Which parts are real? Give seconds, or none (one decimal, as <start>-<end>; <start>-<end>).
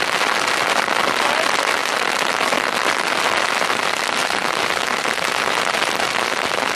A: 0.0-6.8